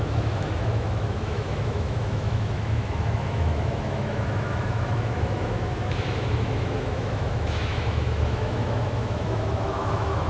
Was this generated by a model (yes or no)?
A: yes